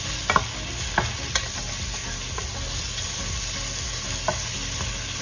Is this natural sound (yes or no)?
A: yes